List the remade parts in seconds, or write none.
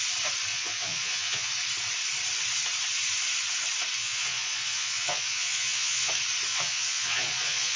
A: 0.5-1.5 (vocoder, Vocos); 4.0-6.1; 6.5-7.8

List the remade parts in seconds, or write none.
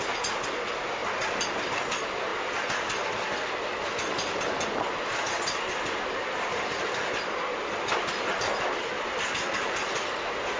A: none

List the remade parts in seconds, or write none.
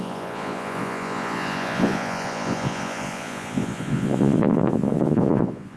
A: 0.0-5.8 (vocoder, Vocos)